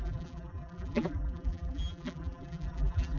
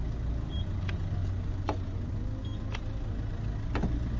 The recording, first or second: second